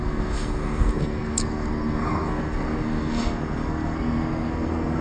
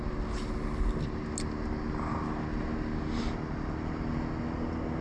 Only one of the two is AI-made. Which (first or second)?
first